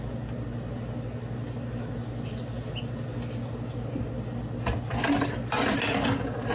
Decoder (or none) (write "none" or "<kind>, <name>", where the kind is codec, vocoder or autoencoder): none